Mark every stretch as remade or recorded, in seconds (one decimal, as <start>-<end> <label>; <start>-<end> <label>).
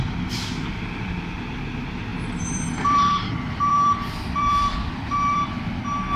0.0-2.1 recorded; 2.1-5.8 remade; 5.8-6.2 recorded